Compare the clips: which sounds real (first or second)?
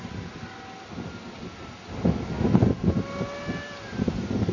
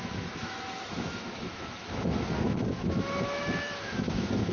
first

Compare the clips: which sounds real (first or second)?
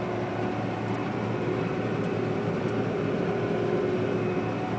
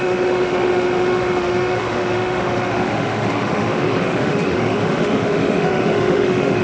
first